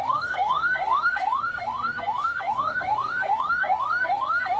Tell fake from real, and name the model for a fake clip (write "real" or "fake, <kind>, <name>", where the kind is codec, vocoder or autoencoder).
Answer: fake, codec, SNAC